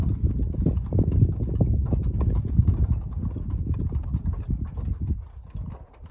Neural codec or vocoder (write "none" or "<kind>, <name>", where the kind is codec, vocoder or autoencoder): none